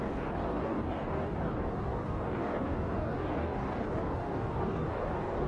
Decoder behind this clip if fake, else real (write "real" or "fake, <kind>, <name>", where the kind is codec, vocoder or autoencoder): fake, codec, DAC